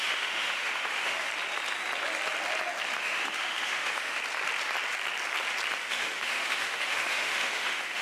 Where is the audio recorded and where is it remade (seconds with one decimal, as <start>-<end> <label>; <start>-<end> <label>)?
0.0-1.3 remade; 1.3-3.0 recorded; 3.0-4.2 remade; 4.2-5.8 recorded; 5.8-8.0 remade